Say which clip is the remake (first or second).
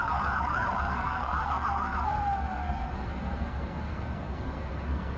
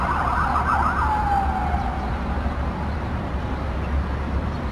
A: first